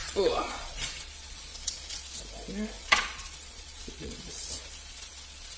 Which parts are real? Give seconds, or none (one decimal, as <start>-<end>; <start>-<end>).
2.2-2.8